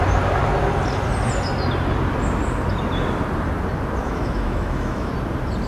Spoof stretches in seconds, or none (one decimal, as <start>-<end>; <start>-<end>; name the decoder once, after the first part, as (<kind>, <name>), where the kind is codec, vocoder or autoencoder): 4.0-5.1 (autoencoder, DAC-VAE)